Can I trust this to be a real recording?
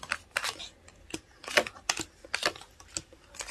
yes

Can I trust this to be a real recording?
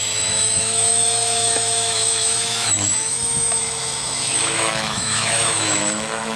no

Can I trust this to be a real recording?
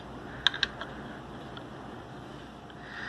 yes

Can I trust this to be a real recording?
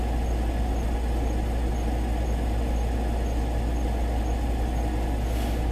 yes